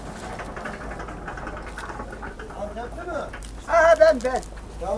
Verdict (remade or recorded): recorded